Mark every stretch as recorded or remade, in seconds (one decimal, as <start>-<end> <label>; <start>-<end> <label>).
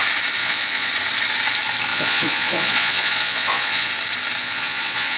0.0-0.4 recorded; 0.4-0.9 remade; 0.9-1.9 recorded; 1.9-3.9 remade; 3.9-4.4 recorded; 4.4-5.2 remade